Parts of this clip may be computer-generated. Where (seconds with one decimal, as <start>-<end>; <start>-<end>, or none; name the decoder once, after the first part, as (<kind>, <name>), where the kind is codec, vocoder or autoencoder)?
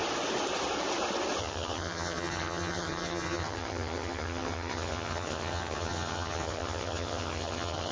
1.4-7.9 (vocoder, HiFi-GAN)